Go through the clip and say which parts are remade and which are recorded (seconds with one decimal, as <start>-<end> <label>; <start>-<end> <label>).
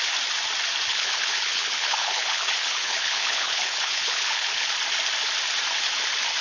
0.0-0.9 recorded; 0.9-4.7 remade; 4.7-6.4 recorded